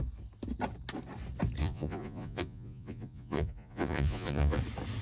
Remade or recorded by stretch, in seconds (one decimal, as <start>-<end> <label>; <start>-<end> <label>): 0.0-1.6 recorded; 1.6-4.6 remade; 4.6-5.0 recorded

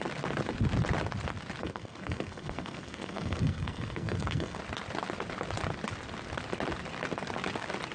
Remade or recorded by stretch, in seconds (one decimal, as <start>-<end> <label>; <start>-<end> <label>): 0.0-1.6 recorded; 1.6-4.6 remade; 4.6-7.9 recorded

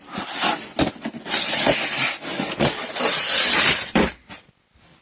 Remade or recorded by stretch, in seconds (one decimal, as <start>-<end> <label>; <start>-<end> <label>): 0.0-5.0 remade

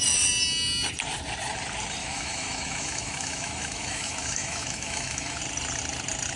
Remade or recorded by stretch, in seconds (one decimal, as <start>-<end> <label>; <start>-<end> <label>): 0.0-2.0 recorded; 2.0-5.4 remade; 5.4-6.4 recorded